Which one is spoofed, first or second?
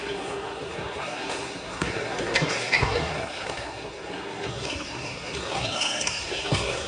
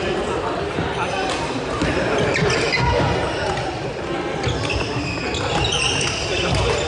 first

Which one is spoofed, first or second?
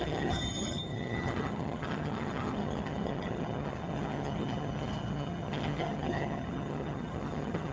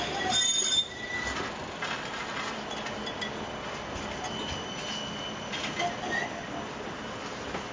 first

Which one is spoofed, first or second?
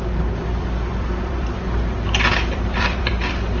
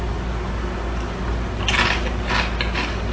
first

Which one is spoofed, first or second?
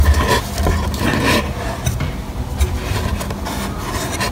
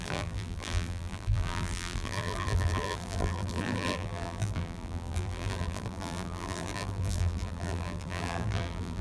second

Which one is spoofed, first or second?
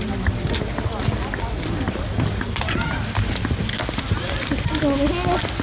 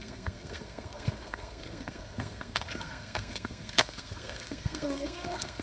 second